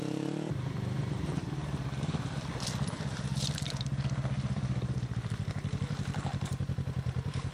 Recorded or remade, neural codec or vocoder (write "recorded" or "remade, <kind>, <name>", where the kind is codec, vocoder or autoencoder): remade, vocoder, BigVGAN v2